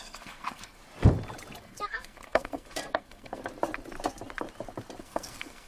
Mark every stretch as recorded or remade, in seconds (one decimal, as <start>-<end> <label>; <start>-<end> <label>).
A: 0.0-0.8 remade; 0.8-1.6 recorded; 1.6-3.4 remade; 3.4-5.0 recorded; 5.0-5.7 remade